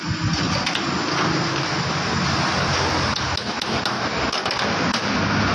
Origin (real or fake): real